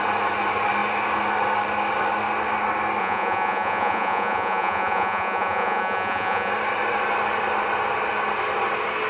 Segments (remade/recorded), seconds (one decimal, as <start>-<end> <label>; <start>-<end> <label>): 0.0-3.0 recorded; 3.0-6.5 remade; 6.5-9.1 recorded